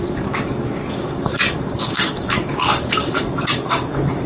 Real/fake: fake